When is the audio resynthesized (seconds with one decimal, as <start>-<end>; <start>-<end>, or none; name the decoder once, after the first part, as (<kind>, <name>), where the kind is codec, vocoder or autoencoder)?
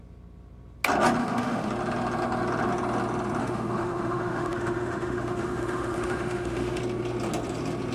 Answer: 1.2-1.7 (autoencoder, DAC-VAE); 3.4-6.8